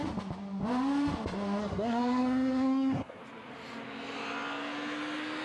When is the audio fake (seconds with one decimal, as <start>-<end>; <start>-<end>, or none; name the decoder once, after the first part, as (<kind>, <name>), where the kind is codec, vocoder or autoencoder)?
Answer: 1.6-3.2 (codec, SNAC)

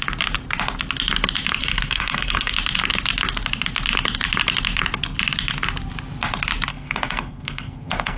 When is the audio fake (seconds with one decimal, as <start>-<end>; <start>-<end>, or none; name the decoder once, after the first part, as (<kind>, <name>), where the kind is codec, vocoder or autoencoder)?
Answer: 1.6-2.5 (codec, SNAC); 6.7-8.2